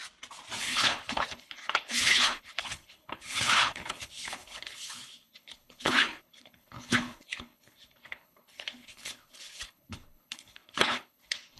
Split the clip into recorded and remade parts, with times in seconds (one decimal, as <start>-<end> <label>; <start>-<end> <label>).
0.0-0.6 recorded; 0.6-11.6 remade